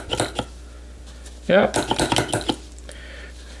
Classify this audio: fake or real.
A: real